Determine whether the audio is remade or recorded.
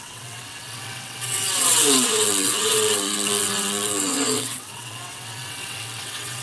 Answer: remade